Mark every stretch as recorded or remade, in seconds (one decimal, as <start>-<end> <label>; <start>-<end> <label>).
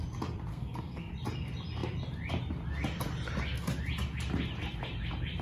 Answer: 0.0-0.5 recorded; 0.5-1.1 remade; 1.1-5.4 recorded